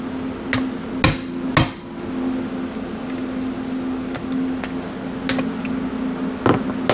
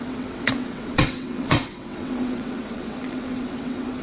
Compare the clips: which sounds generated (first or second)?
second